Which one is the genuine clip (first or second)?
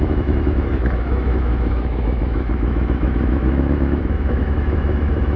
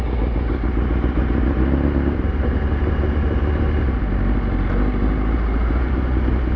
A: second